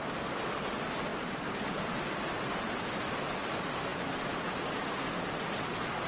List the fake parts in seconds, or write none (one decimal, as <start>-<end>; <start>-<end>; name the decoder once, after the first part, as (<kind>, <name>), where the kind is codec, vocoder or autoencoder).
none